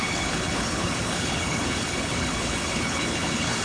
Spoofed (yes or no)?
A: yes